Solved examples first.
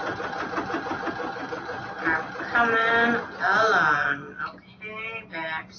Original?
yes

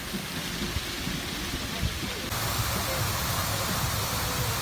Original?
yes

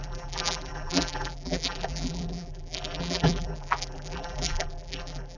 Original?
no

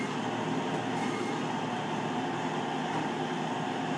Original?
yes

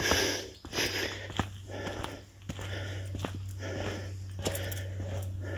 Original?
yes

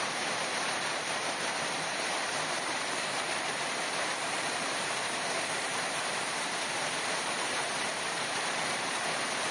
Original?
no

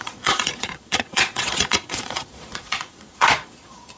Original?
no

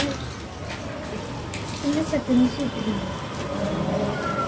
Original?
yes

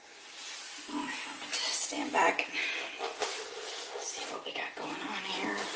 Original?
yes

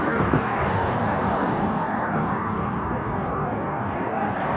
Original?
no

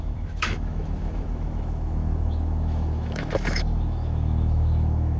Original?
no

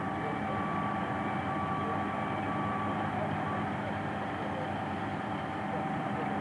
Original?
yes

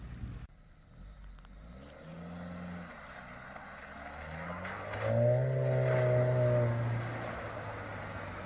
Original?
yes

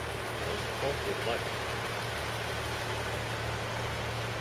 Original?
yes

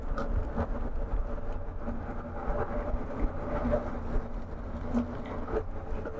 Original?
yes